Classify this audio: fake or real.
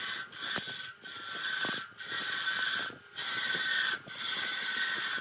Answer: real